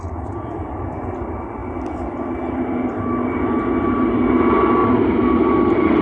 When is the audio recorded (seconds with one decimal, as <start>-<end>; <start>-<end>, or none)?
0.0-4.8